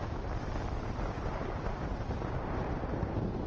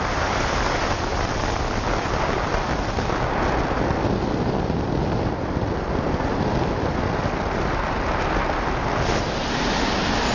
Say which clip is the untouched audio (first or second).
second